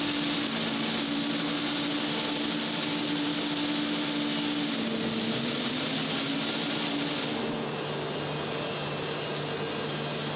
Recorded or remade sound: recorded